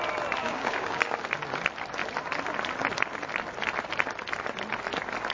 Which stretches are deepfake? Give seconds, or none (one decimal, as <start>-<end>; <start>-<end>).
0.4-1.2